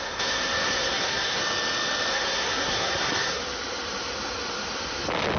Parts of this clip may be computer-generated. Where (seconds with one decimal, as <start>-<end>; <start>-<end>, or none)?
0.0-1.4; 2.1-3.4